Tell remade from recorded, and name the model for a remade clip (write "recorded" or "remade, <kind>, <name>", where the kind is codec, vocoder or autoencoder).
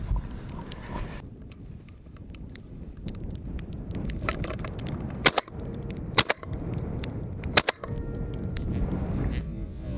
remade, vocoder, BigVGAN v2